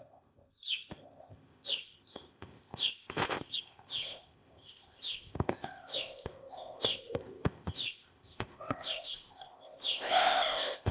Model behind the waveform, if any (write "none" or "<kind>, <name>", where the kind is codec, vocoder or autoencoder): codec, ZipCodec